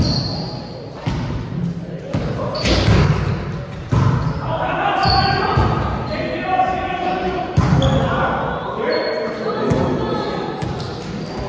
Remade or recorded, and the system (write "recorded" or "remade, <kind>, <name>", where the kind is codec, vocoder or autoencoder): recorded